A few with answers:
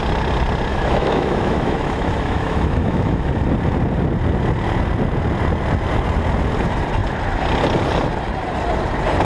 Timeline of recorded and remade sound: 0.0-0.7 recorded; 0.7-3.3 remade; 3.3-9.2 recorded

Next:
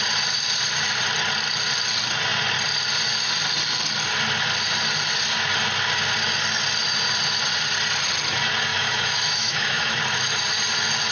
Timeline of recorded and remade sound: 0.0-8.7 recorded; 8.7-10.0 remade; 10.0-11.1 recorded

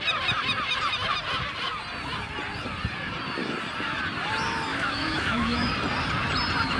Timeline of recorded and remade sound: 0.0-4.7 recorded; 4.7-5.7 remade; 5.7-6.8 recorded

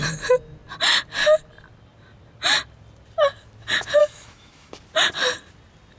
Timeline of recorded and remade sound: 0.0-4.0 recorded; 4.0-4.7 remade; 4.7-6.0 recorded